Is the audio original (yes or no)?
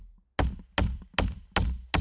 yes